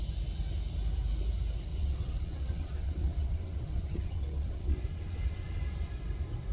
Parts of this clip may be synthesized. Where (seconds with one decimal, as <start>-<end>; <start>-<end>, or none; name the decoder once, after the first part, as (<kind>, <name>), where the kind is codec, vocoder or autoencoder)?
1.7-5.6 (vocoder, WaveNeXt)